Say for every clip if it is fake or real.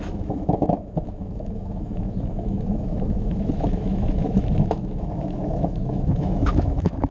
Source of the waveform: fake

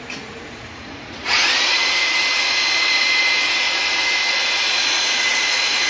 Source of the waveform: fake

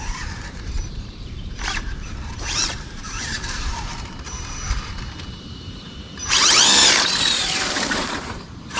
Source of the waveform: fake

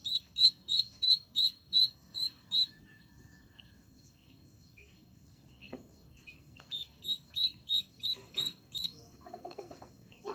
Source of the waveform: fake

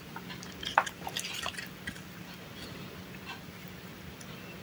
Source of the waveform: real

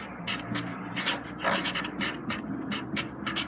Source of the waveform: fake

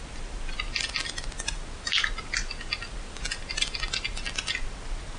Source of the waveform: real